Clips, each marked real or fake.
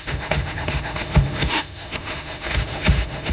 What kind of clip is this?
fake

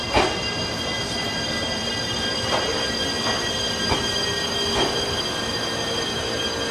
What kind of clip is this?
real